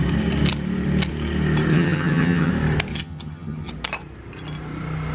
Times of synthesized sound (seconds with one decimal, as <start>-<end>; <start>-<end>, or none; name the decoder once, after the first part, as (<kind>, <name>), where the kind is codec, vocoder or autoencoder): 1.7-2.5 (vocoder, HiFi-GAN); 2.9-3.7